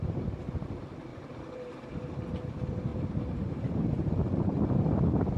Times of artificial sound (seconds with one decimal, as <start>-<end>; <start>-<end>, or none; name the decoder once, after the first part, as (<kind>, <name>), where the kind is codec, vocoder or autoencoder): 1.1-2.3 (vocoder, BigVGAN v2); 2.9-4.1